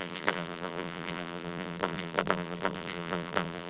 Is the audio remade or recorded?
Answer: remade